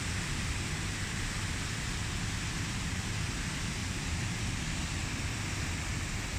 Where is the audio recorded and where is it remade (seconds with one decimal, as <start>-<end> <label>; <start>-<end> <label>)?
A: 0.0-3.8 recorded; 3.8-4.5 remade; 4.5-6.4 recorded